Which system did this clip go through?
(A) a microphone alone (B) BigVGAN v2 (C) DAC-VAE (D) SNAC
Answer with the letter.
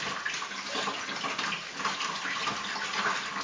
A